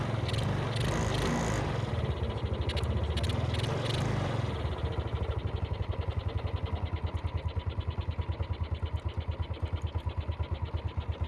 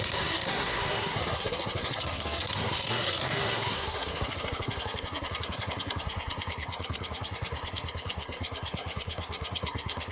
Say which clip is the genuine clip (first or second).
first